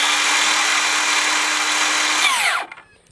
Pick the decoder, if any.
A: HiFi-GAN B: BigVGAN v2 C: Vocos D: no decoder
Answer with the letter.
D